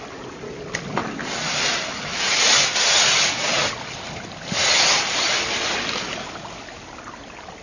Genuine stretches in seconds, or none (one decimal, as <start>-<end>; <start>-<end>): 0.0-7.6